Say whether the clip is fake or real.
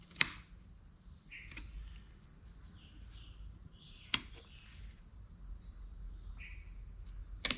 real